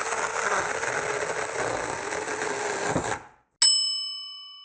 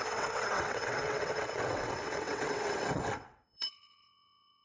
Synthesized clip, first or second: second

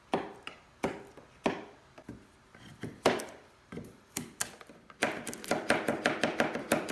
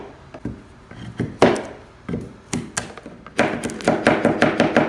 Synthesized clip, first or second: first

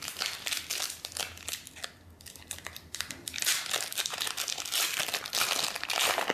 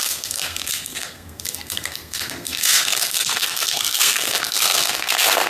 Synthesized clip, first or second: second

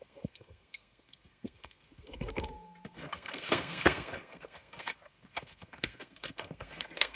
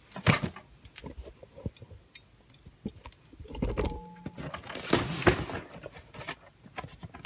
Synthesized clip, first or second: first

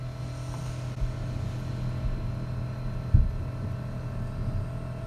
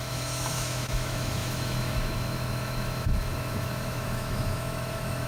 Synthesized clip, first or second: second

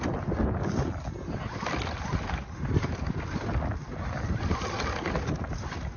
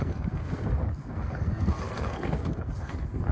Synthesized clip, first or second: second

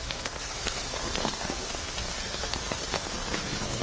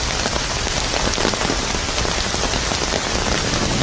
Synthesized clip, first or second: first